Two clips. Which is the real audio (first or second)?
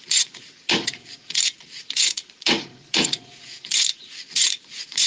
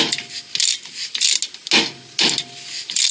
second